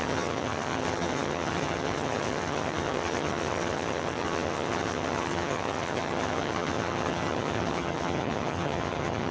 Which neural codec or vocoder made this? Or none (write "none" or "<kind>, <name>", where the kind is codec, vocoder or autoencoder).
vocoder, HiFi-GAN